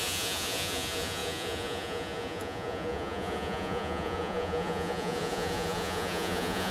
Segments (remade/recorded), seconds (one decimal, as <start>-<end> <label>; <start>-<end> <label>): 0.0-6.7 remade